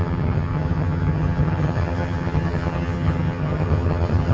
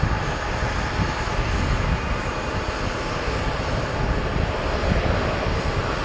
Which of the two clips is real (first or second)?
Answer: second